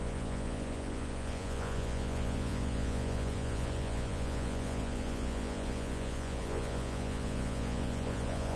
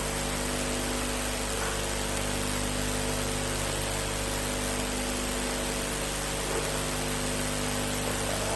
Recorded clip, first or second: second